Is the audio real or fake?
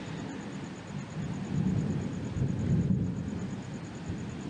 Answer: real